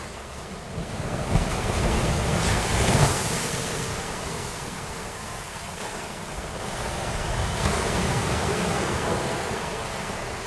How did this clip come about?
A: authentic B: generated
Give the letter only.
B